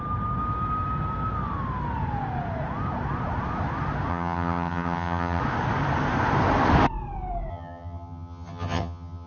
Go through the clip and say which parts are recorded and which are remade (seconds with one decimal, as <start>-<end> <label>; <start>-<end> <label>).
0.0-4.1 recorded; 4.1-5.4 remade; 5.4-7.5 recorded; 7.5-9.3 remade